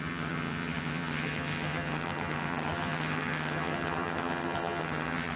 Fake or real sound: fake